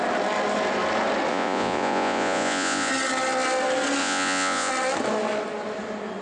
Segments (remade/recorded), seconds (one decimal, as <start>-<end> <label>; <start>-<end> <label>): 0.0-1.3 recorded; 1.3-2.9 remade; 2.9-4.0 recorded; 4.0-4.7 remade; 4.7-6.2 recorded